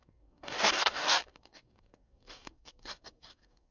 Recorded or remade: remade